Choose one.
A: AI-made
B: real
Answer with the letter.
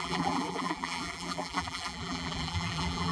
A